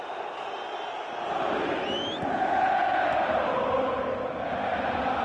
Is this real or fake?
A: real